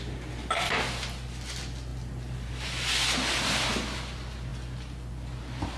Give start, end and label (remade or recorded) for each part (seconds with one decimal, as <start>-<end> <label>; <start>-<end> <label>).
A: 0.0-5.8 recorded